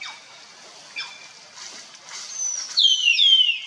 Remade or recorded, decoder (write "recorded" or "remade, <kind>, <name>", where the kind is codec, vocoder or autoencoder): recorded